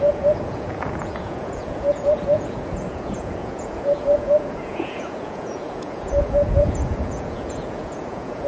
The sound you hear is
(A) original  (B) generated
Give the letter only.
B